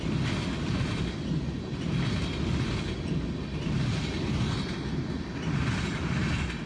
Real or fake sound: real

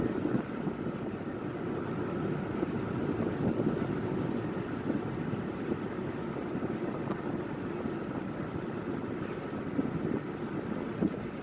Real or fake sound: real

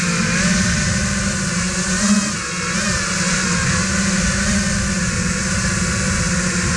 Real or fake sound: real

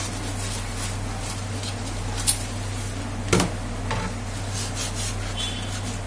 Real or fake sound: real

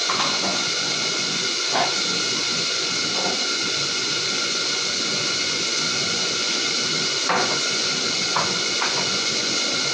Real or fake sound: fake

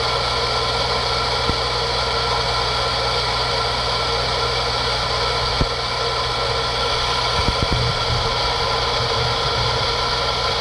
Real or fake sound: real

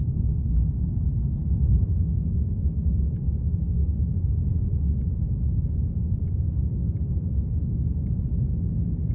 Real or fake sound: real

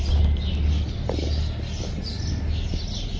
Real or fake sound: real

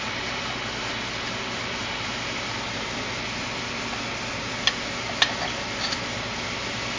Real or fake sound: real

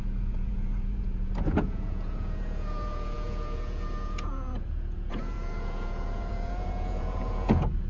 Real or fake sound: fake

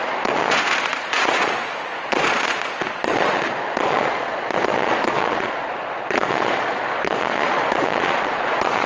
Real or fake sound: fake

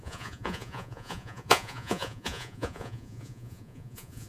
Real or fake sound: fake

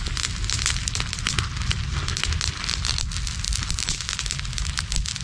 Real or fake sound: real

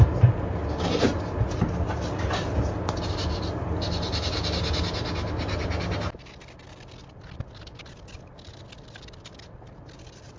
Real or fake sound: real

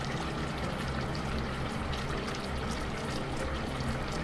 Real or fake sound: real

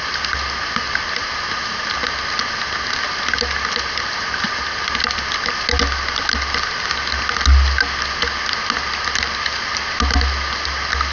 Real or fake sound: real